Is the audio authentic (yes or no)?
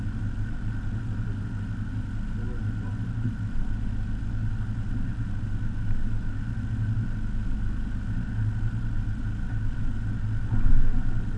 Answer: yes